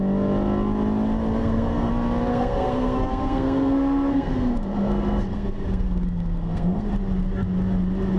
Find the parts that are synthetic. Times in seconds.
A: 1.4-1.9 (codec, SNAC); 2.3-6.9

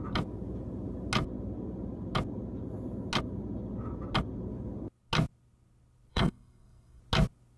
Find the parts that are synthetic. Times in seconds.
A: 6.1-7.0 (codec, SNAC)

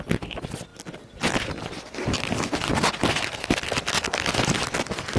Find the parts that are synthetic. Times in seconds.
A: none